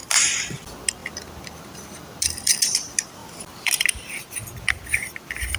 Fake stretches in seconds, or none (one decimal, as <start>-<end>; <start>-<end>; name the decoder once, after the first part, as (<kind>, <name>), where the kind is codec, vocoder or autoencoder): 0.0-0.5 (vocoder, BigVGAN v2); 3.2-3.7